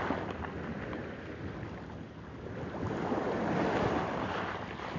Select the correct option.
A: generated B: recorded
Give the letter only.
B